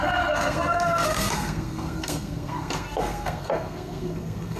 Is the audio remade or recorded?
remade